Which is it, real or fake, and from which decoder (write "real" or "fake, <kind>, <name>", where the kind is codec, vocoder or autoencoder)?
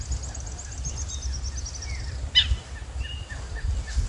real